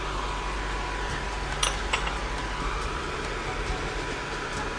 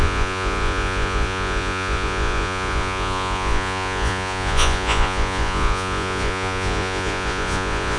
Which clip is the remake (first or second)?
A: second